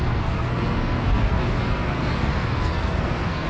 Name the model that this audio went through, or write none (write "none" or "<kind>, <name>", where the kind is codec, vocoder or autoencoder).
codec, SNAC